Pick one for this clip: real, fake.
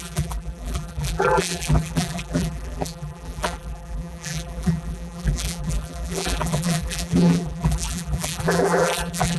fake